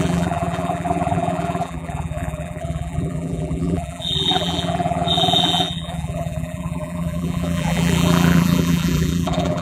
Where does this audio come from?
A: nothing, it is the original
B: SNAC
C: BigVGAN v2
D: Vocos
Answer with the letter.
C